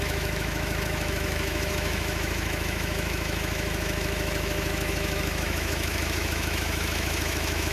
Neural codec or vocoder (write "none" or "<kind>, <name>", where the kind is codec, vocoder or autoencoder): autoencoder, DAC-VAE